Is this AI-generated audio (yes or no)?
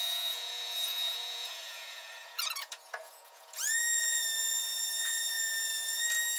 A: yes